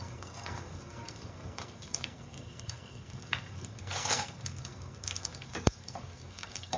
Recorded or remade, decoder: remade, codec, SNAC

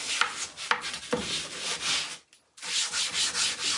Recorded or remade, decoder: recorded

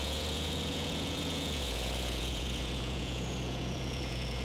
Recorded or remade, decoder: remade, vocoder, Vocos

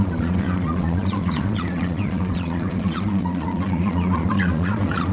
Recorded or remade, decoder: remade, vocoder, Vocos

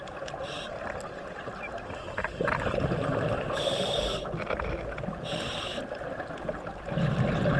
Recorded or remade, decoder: recorded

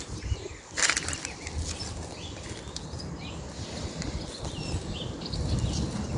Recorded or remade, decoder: recorded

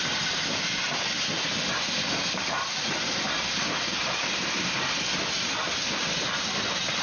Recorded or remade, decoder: remade, vocoder, BigVGAN v2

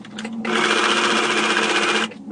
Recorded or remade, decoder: recorded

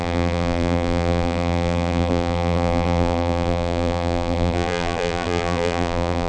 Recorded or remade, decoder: remade, vocoder, BigVGAN v2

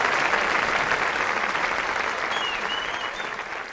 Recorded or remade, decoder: recorded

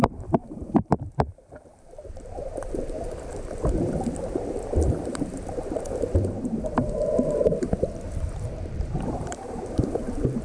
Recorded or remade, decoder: remade, vocoder, BigVGAN v2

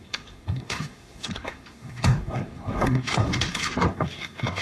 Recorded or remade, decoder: remade, codec, SNAC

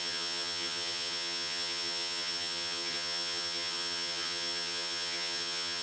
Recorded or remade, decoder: remade, vocoder, HiFi-GAN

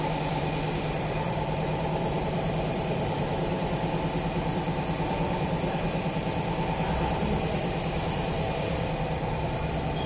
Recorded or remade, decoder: remade, vocoder, BigVGAN v2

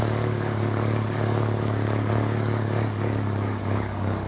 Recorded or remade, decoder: remade, codec, DAC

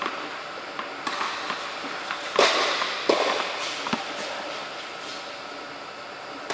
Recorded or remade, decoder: recorded